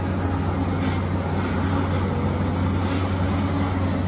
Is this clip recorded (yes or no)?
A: yes